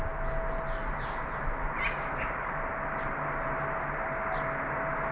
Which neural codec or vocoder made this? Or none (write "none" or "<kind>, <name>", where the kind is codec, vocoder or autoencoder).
none